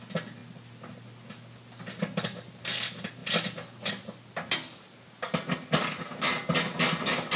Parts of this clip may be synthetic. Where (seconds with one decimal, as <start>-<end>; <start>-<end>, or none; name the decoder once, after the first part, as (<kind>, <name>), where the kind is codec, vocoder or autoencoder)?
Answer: none